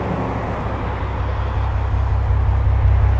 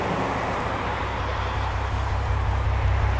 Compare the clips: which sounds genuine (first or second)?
first